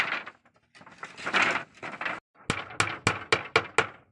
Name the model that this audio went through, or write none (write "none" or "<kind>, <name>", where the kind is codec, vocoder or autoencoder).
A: none